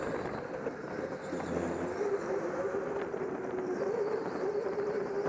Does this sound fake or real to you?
real